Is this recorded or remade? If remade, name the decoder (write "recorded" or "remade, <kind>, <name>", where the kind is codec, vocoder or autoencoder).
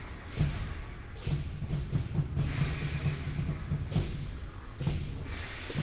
recorded